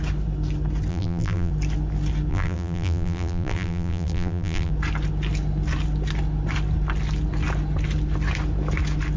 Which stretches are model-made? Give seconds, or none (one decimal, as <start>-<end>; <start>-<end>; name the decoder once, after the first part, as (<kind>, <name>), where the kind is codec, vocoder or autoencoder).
0.9-1.5 (vocoder, BigVGAN v2); 2.3-4.7